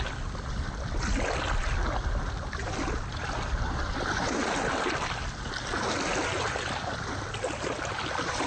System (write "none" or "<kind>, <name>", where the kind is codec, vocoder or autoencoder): none